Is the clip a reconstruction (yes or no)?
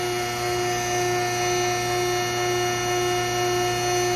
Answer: no